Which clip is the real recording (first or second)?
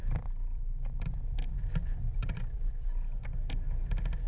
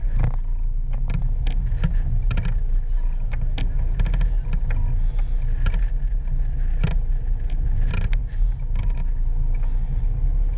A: second